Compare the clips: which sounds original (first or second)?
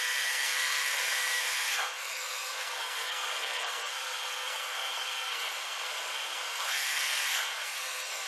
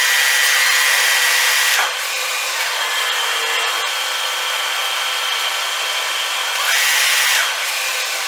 second